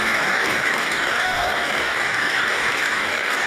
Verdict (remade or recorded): remade